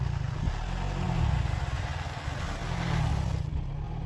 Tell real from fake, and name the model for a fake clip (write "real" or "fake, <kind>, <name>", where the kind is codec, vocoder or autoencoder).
real